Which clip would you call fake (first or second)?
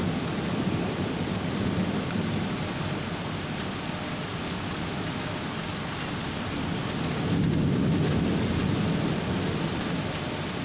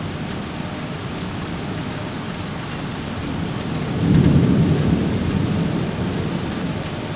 second